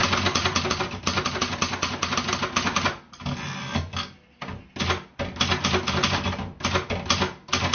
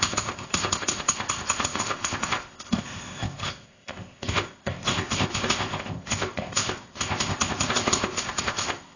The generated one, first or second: second